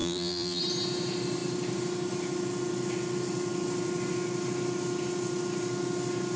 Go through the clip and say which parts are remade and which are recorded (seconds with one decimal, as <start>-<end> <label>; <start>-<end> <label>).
0.0-0.6 remade; 0.6-6.4 recorded